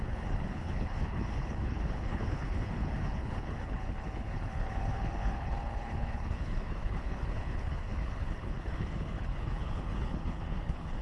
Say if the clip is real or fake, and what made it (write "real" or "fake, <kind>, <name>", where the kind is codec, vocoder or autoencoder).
fake, codec, HILCodec